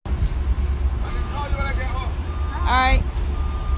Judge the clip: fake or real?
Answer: real